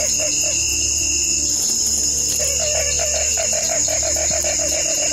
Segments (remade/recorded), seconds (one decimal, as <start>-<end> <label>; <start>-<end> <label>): 0.0-0.7 recorded; 0.7-2.4 remade; 2.4-3.3 recorded; 3.3-5.1 remade